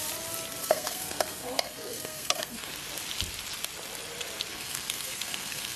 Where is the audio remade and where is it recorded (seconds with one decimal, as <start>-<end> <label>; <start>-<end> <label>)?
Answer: 0.0-0.6 recorded; 0.6-2.7 remade; 2.7-4.5 recorded; 4.5-5.8 remade